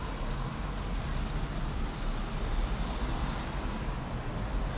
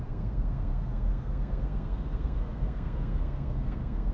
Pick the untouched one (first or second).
first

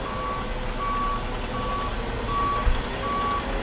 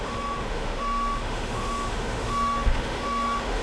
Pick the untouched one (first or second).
first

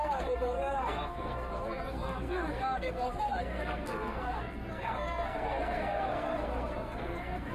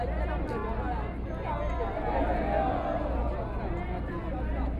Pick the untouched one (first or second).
second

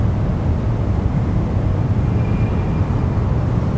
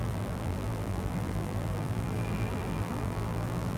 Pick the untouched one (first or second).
first